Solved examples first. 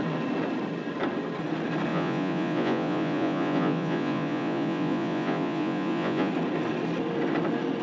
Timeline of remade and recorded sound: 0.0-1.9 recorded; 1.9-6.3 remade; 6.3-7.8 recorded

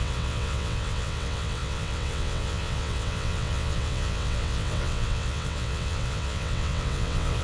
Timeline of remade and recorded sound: 0.0-7.4 remade

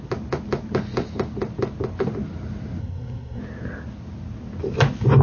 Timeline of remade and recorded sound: 0.0-2.8 recorded; 2.8-3.4 remade; 3.4-5.2 recorded